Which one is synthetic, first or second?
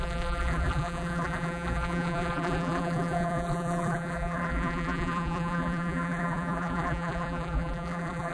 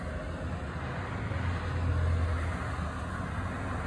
first